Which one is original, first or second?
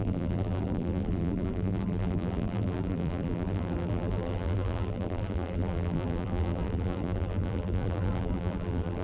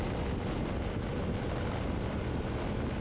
second